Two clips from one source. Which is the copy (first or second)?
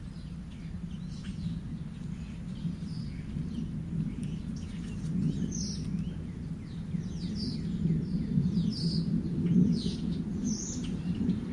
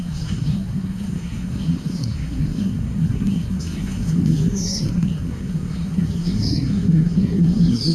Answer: second